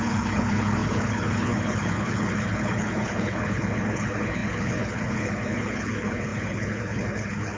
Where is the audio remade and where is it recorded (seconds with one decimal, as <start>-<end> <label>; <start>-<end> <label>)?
0.0-7.6 remade